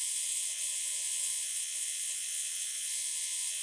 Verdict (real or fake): fake